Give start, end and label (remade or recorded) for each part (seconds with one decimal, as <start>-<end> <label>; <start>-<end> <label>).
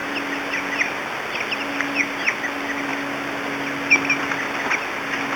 0.0-5.4 recorded